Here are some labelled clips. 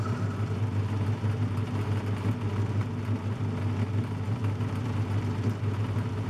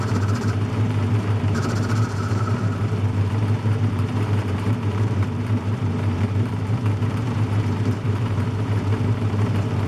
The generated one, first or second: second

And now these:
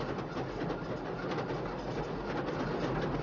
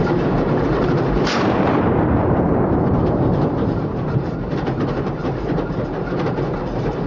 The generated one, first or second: second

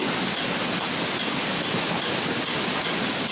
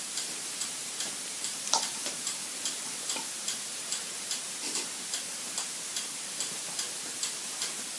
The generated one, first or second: second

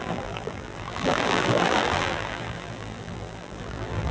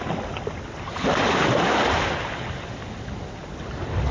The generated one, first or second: first